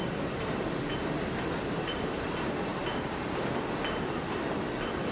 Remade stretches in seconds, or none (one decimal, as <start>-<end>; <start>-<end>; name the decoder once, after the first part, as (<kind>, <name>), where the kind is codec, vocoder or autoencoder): none